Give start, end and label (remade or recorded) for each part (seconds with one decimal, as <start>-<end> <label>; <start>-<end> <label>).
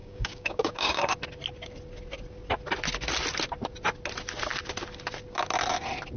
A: 0.0-1.1 remade; 1.1-6.2 recorded